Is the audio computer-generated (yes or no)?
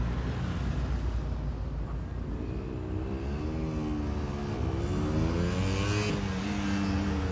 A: no